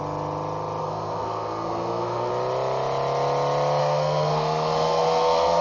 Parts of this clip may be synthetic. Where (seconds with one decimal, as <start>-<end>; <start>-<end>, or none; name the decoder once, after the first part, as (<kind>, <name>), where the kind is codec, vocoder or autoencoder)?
0.8-2.3 (codec, SNAC); 3.8-5.6